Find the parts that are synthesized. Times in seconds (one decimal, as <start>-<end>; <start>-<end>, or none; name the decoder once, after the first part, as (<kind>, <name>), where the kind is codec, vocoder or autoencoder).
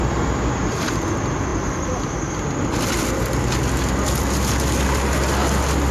none